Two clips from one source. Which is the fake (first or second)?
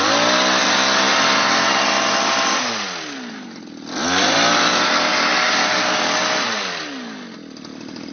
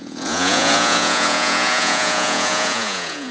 second